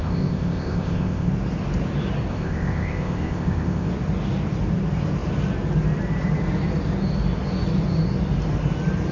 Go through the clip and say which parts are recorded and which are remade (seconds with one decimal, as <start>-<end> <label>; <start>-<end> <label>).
0.0-1.3 remade; 1.3-2.3 recorded; 2.3-3.9 remade; 3.9-9.1 recorded